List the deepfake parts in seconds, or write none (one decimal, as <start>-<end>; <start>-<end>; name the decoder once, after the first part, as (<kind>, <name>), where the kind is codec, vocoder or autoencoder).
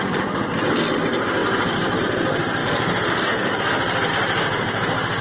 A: none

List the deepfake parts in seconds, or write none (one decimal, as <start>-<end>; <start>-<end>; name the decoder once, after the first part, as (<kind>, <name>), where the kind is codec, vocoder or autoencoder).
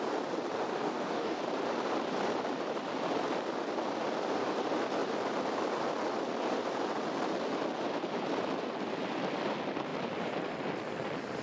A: 0.7-1.4 (codec, DAC)